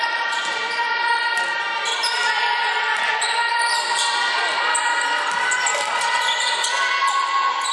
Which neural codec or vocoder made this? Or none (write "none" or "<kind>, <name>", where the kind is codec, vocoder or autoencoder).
none